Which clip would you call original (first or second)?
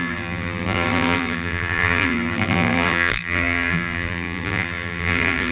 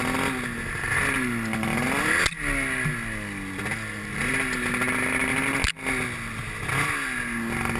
second